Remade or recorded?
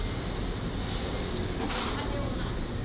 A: recorded